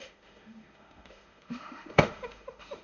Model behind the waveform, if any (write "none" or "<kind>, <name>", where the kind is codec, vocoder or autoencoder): autoencoder, DAC-VAE